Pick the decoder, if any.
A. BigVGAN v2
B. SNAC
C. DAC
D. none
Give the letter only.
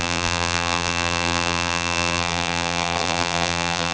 A